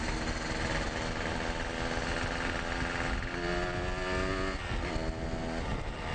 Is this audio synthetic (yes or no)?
no